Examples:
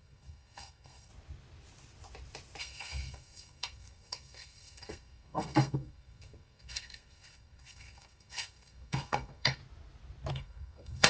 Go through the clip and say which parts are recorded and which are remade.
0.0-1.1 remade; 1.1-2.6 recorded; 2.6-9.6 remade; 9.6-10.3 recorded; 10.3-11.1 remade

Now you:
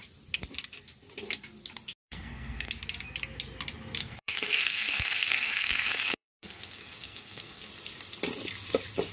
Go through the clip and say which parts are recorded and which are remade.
0.0-2.0 recorded; 2.0-2.7 remade; 2.7-4.0 recorded; 4.0-7.7 remade; 7.7-9.1 recorded

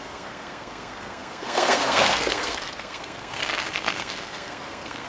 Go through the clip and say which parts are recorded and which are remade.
0.0-5.1 remade

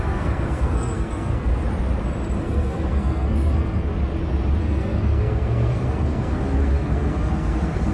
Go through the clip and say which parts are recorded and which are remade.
0.0-1.5 remade; 1.5-2.4 recorded; 2.4-3.9 remade; 3.9-4.6 recorded; 4.6-7.9 remade

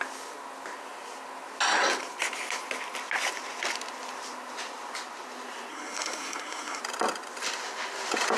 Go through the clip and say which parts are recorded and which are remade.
0.0-5.7 recorded; 5.7-6.8 remade; 6.8-8.4 recorded

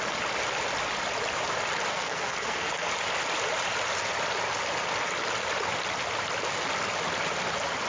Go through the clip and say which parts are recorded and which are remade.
0.0-1.9 recorded; 1.9-2.9 remade; 2.9-7.9 recorded

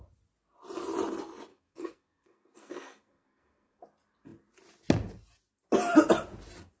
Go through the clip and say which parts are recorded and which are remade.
0.0-1.5 recorded; 1.5-3.8 remade; 3.8-6.8 recorded

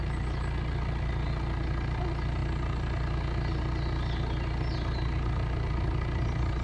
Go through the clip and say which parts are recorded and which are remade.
0.0-6.6 recorded